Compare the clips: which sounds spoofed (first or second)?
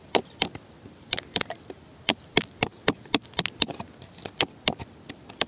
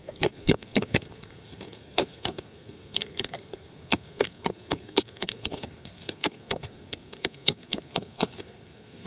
second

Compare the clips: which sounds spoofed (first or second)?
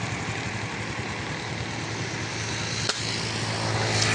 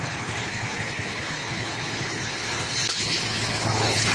second